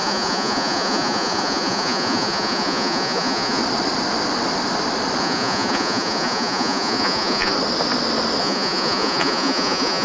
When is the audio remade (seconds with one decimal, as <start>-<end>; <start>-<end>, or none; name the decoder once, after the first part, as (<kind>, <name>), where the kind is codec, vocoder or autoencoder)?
0.0-3.6 (vocoder, Vocos); 5.2-7.5; 8.4-10.0